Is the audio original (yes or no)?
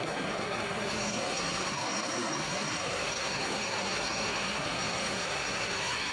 no